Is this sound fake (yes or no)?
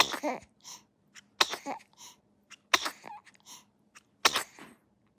no